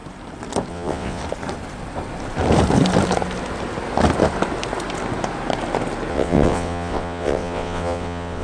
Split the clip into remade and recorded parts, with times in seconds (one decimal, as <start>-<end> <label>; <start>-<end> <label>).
0.0-0.7 recorded; 0.7-1.2 remade; 1.2-6.1 recorded; 6.1-8.4 remade